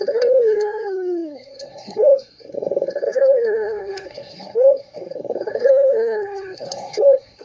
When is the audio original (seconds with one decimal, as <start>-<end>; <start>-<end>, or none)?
none